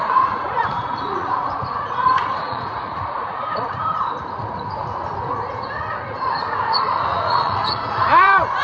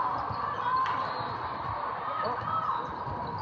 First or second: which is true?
second